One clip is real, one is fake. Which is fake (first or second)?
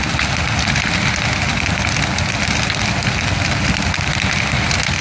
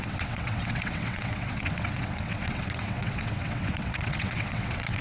second